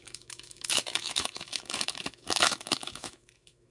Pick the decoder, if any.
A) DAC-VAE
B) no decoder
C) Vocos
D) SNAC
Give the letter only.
A